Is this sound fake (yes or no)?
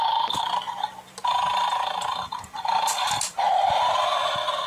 no